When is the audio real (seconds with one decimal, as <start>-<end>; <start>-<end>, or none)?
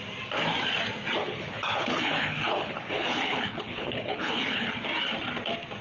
0.0-1.2; 4.7-5.8